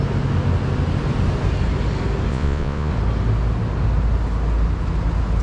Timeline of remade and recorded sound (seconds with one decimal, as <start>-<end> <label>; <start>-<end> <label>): 0.0-2.3 recorded; 2.3-2.9 remade; 2.9-5.4 recorded